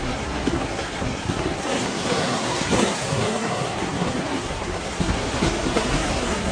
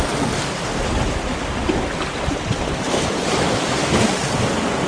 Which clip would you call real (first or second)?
second